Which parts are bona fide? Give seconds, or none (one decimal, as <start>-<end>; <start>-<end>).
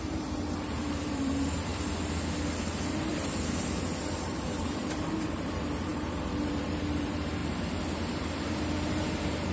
1.7-3.0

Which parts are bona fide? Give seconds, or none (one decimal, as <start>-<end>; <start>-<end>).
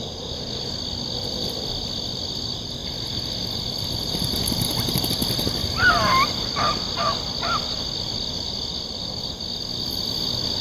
0.0-2.8; 5.0-5.6; 9.2-10.6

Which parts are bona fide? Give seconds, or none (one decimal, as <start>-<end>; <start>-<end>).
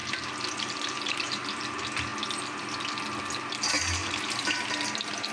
1.5-4.0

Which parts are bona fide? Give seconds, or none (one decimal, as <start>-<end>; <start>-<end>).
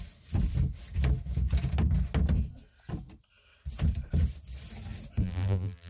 0.0-5.2